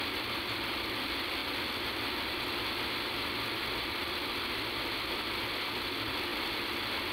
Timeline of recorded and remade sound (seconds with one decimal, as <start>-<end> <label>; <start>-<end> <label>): 0.0-7.1 recorded

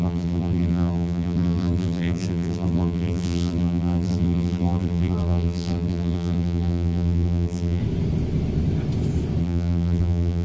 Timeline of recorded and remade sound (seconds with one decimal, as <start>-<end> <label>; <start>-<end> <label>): 0.0-7.8 remade; 7.8-9.4 recorded; 9.4-10.4 remade

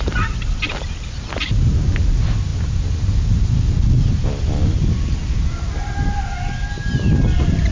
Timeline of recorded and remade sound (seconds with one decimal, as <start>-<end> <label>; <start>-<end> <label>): 0.0-7.7 recorded